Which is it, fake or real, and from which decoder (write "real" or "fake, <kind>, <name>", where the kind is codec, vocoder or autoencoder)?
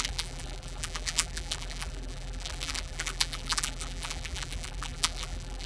fake, vocoder, BigVGAN v2